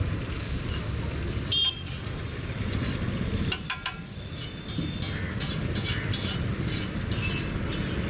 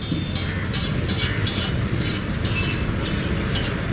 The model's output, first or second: first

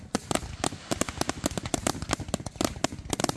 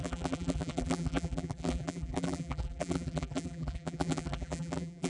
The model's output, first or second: second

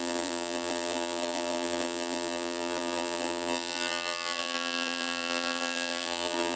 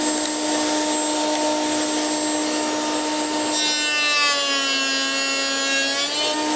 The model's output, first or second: first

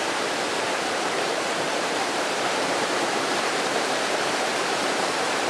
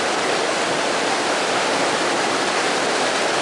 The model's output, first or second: first